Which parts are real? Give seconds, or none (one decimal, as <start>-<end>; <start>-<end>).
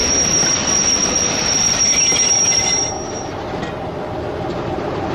0.0-3.1; 3.6-4.5